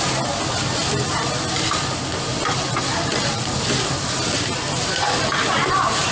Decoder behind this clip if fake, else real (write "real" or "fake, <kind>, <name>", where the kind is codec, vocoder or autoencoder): fake, vocoder, BigVGAN v2